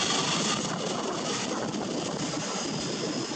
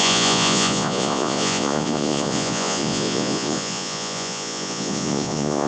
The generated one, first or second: second